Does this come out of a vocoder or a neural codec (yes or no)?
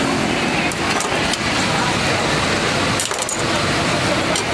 no